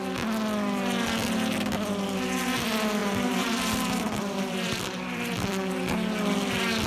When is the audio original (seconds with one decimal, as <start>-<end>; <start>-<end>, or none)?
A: 0.0-3.0; 5.5-6.9